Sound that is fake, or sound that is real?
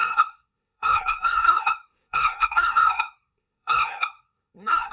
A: fake